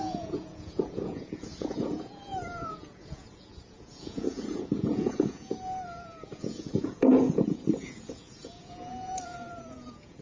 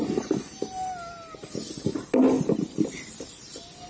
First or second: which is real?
second